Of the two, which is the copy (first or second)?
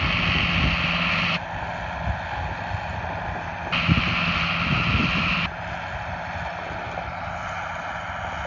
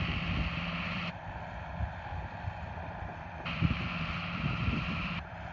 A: second